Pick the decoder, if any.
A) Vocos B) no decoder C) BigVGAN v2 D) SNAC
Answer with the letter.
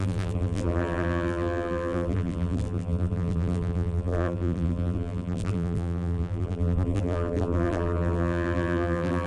C